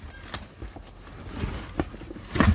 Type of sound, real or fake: real